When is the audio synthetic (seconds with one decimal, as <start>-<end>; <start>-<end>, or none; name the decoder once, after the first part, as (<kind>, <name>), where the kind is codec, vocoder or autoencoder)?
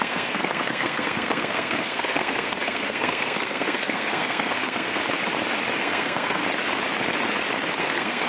0.0-5.0 (codec, SNAC); 5.8-6.4; 7.8-8.3